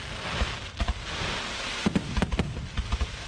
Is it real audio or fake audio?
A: real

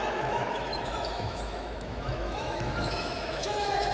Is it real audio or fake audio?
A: fake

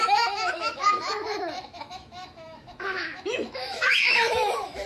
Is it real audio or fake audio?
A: fake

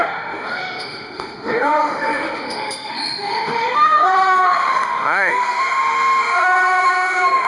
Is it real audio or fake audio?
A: fake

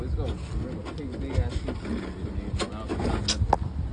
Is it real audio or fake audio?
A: real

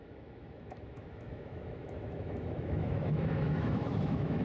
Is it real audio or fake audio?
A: fake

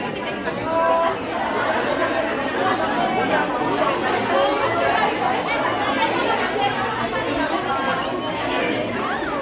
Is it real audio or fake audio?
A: real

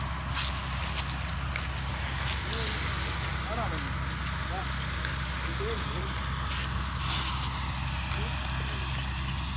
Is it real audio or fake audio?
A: real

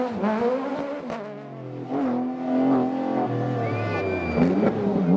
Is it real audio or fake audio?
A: real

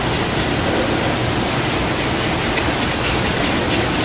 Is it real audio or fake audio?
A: real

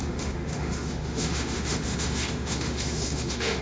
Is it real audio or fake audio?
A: fake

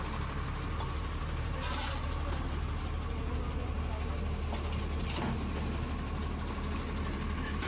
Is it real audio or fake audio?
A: real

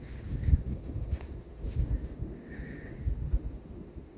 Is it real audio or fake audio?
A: fake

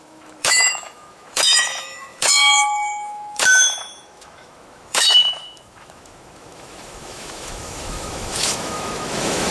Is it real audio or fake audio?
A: fake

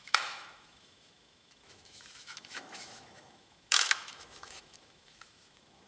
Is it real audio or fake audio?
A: fake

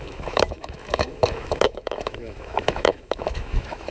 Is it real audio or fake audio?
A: fake